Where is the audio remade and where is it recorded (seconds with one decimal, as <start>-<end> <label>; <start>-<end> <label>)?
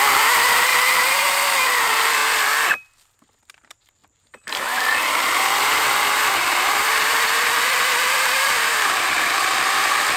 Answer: 0.0-0.7 remade; 0.7-1.5 recorded; 1.5-2.2 remade; 2.2-3.4 recorded; 3.4-10.2 remade